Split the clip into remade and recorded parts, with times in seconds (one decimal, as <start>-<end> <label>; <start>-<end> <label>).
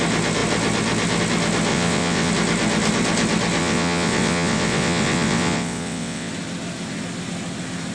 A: 0.0-1.7 recorded; 1.7-2.3 remade; 2.3-3.6 recorded; 3.6-6.3 remade; 6.3-7.9 recorded